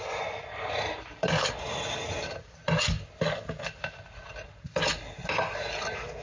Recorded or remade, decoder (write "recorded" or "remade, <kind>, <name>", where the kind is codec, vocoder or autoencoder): recorded